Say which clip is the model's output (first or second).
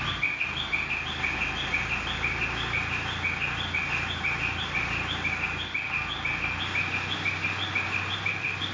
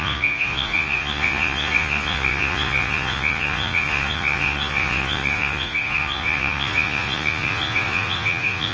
second